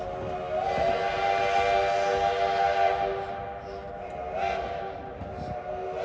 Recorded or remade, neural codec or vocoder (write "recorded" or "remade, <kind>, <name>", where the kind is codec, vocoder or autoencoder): recorded